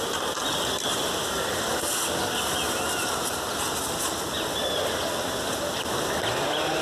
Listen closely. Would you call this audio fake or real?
real